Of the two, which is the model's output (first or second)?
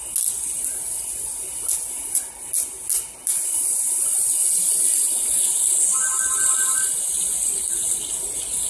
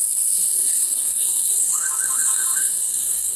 second